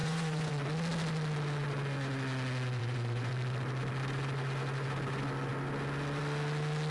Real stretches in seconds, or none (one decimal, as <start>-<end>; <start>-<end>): 0.5-2.8; 3.3-6.9